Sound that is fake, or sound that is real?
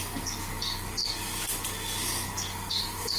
fake